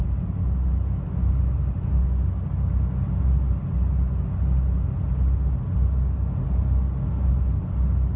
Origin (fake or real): real